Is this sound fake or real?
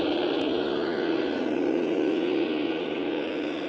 fake